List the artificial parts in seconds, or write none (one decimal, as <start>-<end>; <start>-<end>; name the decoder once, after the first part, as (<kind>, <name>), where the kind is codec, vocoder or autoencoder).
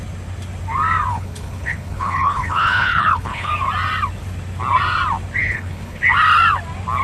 1.1-3.5 (codec, HILCodec); 5.4-6.0